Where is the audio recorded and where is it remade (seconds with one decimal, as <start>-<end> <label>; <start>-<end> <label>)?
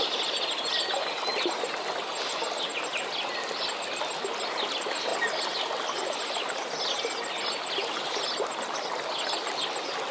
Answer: 0.0-10.1 recorded